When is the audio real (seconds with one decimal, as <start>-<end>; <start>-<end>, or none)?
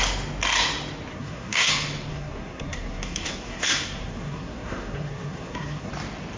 0.0-1.1; 1.7-2.1; 5.9-6.4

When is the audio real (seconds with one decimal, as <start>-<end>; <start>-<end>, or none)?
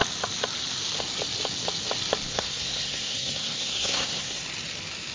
0.0-2.3; 4.4-5.1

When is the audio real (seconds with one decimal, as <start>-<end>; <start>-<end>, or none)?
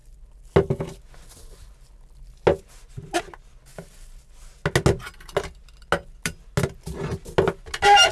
0.0-8.1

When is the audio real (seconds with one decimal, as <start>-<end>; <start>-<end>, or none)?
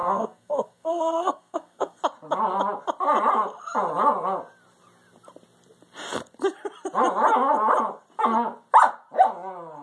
2.0-9.8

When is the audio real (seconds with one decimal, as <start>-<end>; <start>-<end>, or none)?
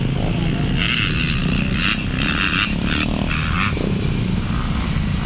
0.0-5.3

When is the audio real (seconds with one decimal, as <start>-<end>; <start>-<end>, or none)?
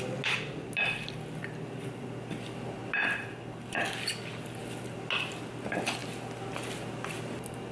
0.0-7.7